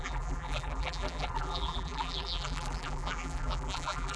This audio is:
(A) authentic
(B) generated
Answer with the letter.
B